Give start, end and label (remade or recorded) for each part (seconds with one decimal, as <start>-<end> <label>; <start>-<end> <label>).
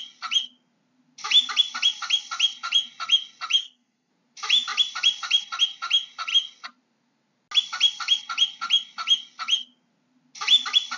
0.0-3.6 recorded; 3.6-4.1 remade; 4.1-11.0 recorded